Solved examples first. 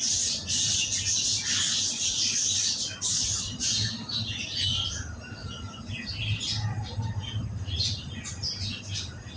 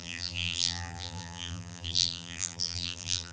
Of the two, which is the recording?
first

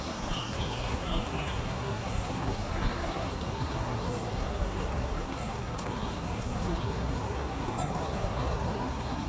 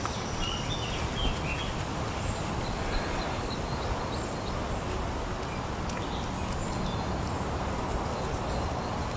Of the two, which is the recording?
second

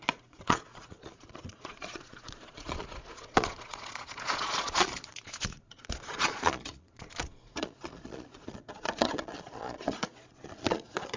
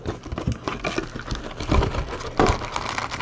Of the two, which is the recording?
second